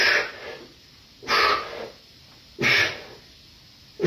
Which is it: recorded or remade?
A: recorded